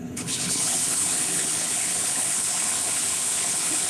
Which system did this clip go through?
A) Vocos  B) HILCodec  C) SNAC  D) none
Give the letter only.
B